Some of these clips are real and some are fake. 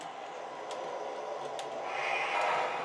real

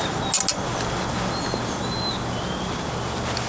real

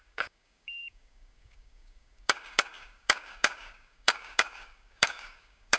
fake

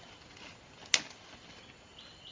real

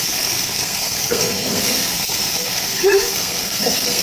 fake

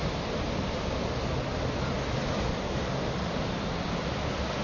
real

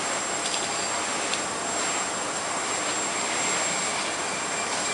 real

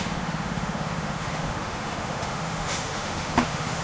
fake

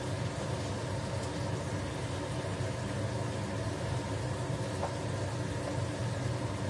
real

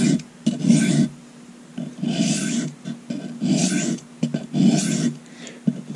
real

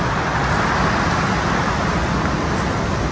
real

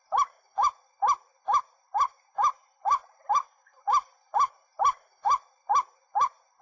fake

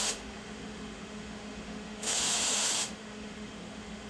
fake